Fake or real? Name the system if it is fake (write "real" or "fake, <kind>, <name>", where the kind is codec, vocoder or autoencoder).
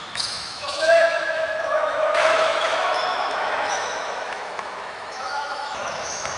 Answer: fake, autoencoder, DAC-VAE